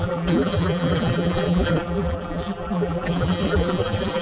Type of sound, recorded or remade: remade